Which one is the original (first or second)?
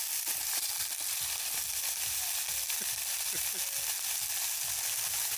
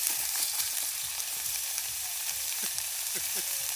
first